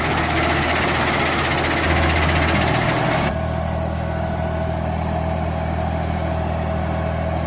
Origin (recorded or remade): recorded